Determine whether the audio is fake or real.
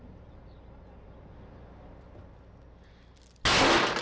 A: real